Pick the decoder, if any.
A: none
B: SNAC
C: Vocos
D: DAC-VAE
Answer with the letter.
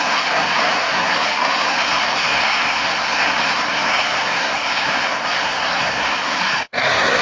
B